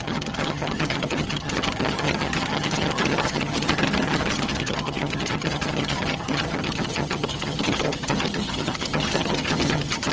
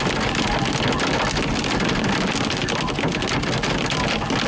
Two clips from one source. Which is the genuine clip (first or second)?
second